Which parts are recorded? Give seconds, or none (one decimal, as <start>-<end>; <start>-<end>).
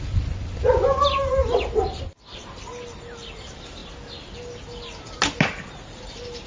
0.0-6.5